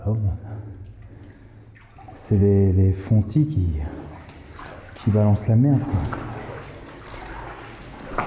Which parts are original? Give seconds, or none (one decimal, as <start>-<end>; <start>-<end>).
0.0-8.3